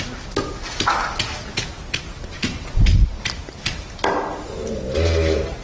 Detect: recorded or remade recorded